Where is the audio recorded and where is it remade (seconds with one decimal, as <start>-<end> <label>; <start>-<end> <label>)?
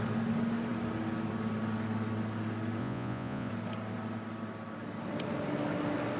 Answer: 0.0-2.8 recorded; 2.8-3.5 remade; 3.5-6.2 recorded